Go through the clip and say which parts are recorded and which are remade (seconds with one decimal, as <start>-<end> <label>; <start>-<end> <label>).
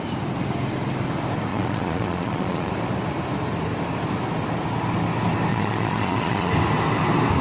0.0-1.5 recorded; 1.5-2.7 remade; 2.7-5.5 recorded; 5.5-6.5 remade; 6.5-7.4 recorded